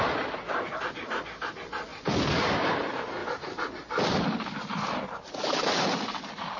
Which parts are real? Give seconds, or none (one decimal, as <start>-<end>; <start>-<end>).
0.0-1.9; 2.8-3.2; 5.0-6.6